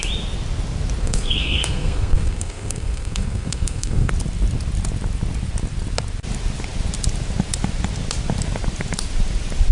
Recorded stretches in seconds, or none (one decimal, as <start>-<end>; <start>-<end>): 0.0-1.0; 4.1-9.7